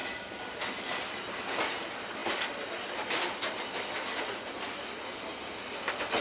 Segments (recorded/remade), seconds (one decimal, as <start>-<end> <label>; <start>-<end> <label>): 0.0-6.2 recorded